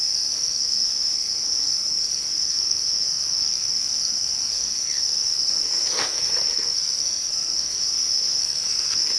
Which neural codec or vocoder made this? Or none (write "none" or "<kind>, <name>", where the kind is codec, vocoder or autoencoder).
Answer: codec, SNAC